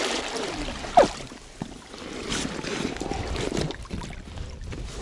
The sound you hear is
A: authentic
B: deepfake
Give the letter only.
B